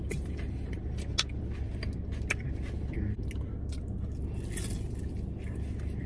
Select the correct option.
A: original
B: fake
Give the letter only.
A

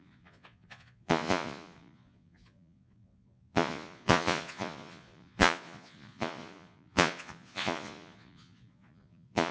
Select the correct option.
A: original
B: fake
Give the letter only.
B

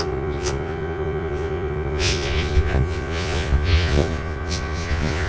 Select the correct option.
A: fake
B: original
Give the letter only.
A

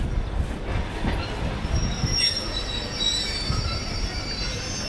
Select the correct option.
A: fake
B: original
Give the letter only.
B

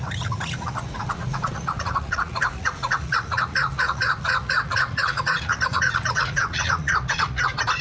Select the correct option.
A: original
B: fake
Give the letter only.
B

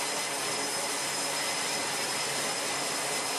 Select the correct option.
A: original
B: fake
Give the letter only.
A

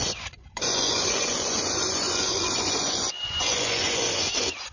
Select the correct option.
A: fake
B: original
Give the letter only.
A